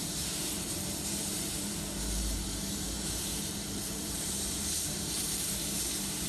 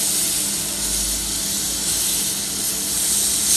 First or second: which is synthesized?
first